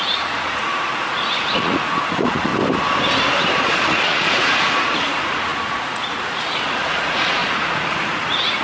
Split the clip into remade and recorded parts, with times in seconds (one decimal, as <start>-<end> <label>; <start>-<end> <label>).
0.0-2.5 remade; 2.5-3.6 recorded; 3.6-8.6 remade